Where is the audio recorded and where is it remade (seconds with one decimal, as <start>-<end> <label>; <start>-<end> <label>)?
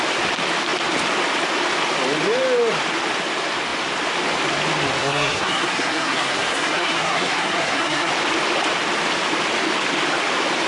0.0-5.0 recorded; 5.0-8.1 remade; 8.1-10.7 recorded